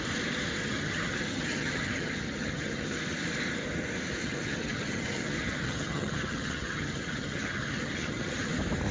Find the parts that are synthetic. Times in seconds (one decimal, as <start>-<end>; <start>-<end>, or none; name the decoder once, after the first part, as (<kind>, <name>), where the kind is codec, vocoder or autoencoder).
0.6-3.0 (vocoder, HiFi-GAN); 4.2-8.5